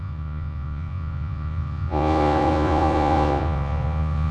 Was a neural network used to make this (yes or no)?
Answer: yes